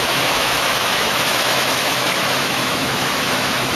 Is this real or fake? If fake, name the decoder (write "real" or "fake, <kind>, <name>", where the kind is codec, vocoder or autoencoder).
fake, autoencoder, DAC-VAE